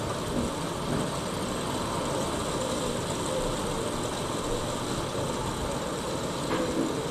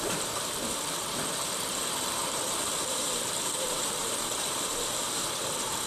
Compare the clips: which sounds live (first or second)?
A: first